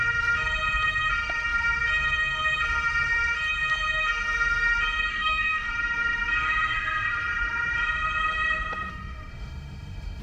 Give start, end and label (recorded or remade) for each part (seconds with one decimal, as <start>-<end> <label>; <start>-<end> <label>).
0.0-5.1 recorded; 5.1-5.7 remade; 5.7-8.9 recorded; 8.9-10.2 remade